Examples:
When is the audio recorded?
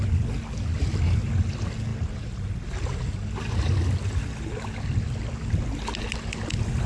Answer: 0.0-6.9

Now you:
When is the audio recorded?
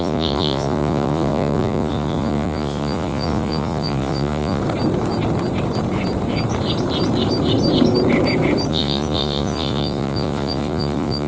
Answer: 4.6-8.7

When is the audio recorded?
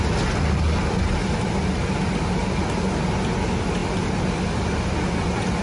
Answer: 0.0-5.6